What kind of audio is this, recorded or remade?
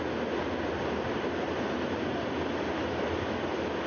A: recorded